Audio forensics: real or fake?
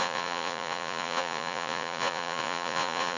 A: fake